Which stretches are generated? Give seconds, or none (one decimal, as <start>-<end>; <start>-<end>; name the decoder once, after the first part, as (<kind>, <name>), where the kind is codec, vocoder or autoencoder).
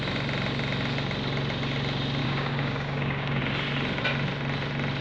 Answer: 2.2-3.4 (codec, DAC)